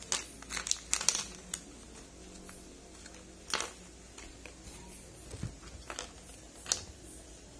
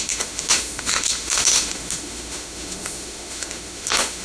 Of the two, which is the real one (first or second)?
first